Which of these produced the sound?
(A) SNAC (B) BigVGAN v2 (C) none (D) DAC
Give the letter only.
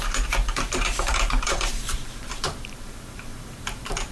B